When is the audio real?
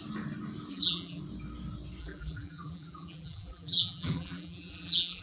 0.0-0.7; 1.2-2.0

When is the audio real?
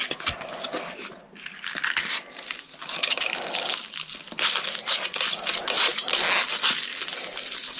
0.0-7.8